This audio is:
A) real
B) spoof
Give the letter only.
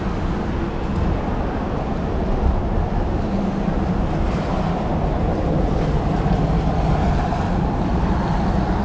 A